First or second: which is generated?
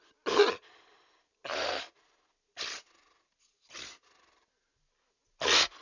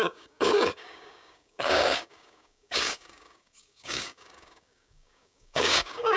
second